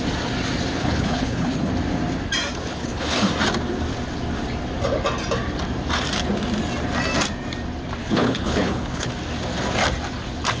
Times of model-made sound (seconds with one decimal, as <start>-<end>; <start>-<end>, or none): 0.8-1.7; 2.7-3.3; 8.0-9.1

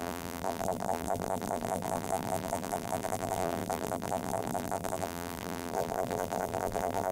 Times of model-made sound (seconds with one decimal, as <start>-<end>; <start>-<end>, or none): 0.0-7.1

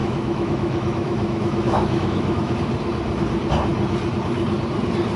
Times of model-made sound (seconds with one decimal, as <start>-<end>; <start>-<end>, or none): 0.0-2.5